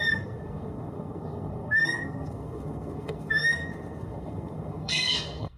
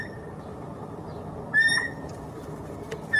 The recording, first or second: second